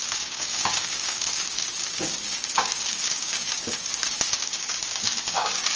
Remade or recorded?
remade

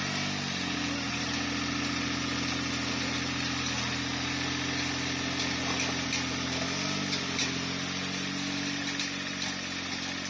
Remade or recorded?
recorded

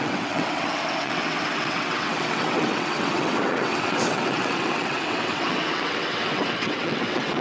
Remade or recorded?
remade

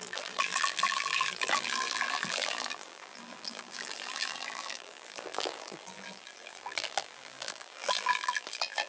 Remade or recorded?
remade